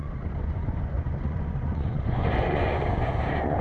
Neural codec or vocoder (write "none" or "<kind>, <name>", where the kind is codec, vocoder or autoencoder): vocoder, Vocos